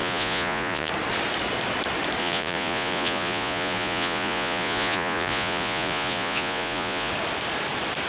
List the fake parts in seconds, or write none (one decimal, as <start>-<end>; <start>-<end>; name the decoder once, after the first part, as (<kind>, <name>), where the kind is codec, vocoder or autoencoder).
0.0-0.9 (vocoder, Vocos); 2.2-7.1

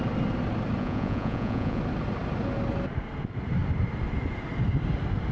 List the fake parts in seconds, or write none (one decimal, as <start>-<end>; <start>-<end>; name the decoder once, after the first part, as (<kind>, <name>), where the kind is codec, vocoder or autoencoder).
0.8-1.8 (vocoder, Vocos)

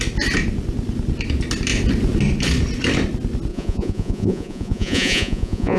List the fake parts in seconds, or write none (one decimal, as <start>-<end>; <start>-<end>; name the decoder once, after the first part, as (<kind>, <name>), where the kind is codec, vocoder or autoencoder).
3.5-5.8 (vocoder, Vocos)

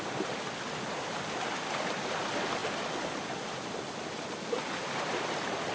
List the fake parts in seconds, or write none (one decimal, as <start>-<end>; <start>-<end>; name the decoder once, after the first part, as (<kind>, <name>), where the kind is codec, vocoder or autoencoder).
none

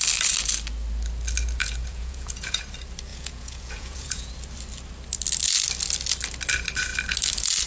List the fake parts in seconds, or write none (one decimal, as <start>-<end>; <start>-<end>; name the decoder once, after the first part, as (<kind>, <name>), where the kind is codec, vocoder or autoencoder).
1.6-2.6 (vocoder, Vocos); 3.1-4.3

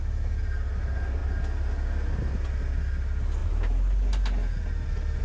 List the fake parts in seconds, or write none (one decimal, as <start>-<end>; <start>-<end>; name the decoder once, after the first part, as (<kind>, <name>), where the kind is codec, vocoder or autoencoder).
none